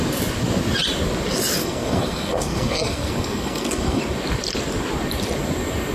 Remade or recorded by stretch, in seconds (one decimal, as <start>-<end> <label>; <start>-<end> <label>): 0.0-1.6 recorded; 1.6-4.0 remade; 4.0-5.9 recorded